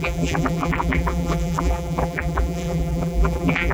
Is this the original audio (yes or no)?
no